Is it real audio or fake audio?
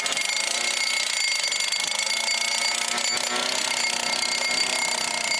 real